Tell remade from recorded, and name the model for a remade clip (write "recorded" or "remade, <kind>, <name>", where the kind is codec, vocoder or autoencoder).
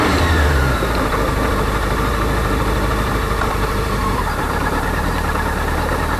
remade, vocoder, BigVGAN v2